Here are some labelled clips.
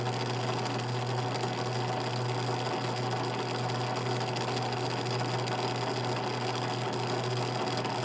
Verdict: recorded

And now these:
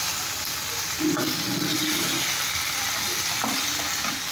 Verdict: recorded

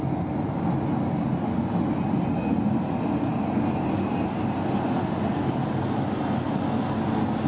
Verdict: recorded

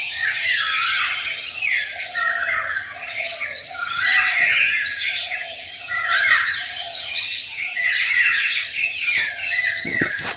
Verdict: remade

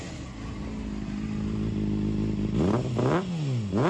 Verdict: recorded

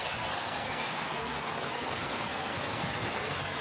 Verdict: remade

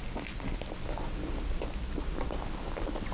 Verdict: recorded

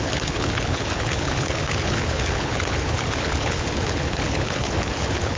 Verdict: remade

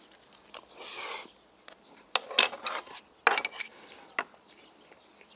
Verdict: recorded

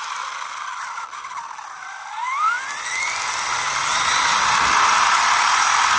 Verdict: recorded